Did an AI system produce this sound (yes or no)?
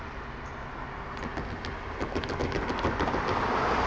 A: no